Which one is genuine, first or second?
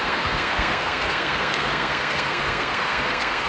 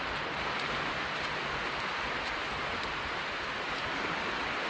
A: second